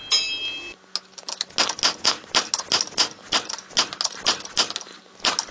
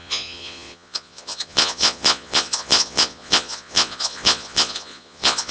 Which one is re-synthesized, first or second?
second